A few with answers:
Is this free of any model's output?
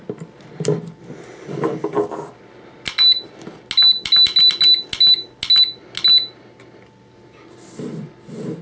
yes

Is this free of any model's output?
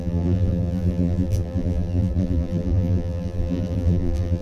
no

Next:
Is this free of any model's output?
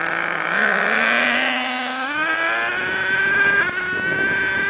yes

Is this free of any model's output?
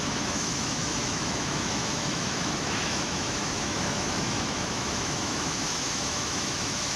no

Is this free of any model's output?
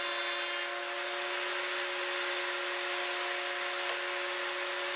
yes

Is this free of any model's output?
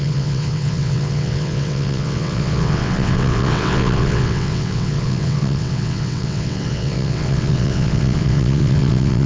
no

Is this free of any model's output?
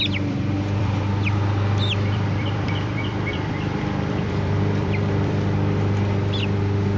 no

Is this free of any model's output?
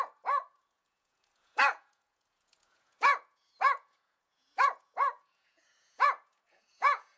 no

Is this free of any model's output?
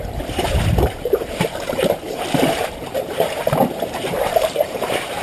no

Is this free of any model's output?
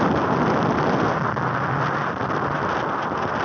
yes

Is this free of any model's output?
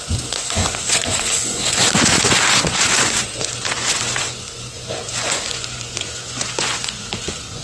no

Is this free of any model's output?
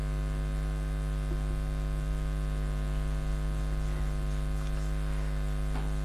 yes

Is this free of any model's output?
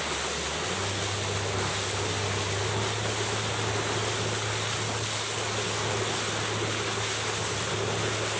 yes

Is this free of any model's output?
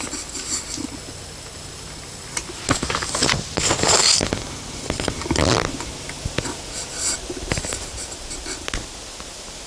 yes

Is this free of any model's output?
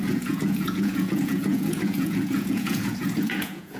no